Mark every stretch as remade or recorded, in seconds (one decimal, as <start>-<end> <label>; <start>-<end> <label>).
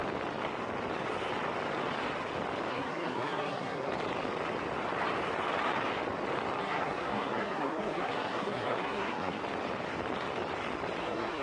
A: 0.0-2.7 recorded; 2.7-3.9 remade; 3.9-6.6 recorded; 6.6-9.4 remade; 9.4-11.0 recorded; 11.0-11.4 remade